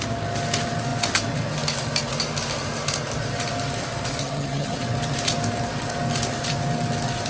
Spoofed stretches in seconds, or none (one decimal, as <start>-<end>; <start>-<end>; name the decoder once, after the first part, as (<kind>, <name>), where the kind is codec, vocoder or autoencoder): 4.2-4.8 (vocoder, HiFi-GAN)